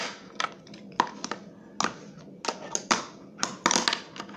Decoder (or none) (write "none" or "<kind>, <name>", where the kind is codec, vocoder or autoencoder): none